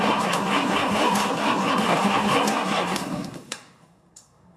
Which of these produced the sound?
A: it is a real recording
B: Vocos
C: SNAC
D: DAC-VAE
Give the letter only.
C